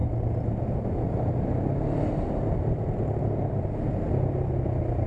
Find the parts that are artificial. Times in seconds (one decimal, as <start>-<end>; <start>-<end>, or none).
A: none